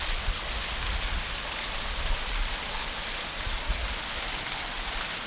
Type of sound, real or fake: real